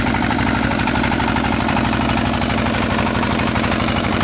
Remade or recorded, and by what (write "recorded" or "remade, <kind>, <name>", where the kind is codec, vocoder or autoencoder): remade, vocoder, BigVGAN v2